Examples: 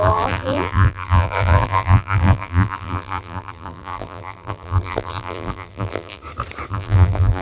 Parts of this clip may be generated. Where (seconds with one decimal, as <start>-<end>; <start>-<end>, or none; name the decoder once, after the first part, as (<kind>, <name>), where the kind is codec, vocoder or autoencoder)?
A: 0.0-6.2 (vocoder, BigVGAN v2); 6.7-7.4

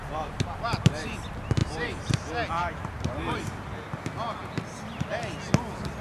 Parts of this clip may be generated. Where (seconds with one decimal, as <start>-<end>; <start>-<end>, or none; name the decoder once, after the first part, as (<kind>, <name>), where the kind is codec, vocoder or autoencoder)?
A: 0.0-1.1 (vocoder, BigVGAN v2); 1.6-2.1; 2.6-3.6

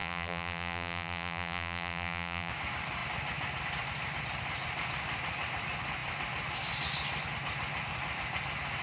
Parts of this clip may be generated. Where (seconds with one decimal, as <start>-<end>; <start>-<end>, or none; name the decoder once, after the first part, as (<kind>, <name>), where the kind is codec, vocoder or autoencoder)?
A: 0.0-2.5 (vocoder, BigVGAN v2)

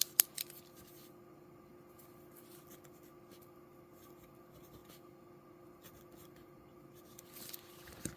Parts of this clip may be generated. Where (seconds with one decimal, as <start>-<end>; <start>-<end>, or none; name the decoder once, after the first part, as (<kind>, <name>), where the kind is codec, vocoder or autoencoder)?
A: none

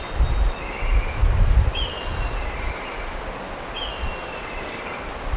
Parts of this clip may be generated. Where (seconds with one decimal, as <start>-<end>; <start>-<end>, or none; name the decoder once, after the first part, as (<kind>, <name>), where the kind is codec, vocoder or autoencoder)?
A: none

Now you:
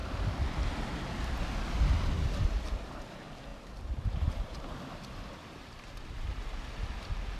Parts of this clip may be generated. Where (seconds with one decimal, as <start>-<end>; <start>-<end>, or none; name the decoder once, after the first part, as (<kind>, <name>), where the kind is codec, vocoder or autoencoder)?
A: 3.5-6.4 (vocoder, BigVGAN v2)

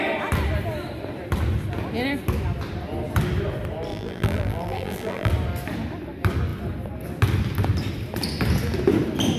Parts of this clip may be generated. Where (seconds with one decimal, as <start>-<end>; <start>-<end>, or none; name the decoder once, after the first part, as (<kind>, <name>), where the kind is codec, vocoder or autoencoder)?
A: 3.9-5.3 (vocoder, BigVGAN v2)

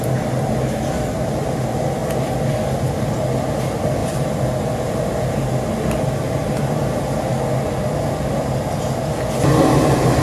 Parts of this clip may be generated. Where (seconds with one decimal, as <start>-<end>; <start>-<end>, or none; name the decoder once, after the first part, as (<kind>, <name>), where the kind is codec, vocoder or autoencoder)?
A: 4.0-5.4 (vocoder, BigVGAN v2)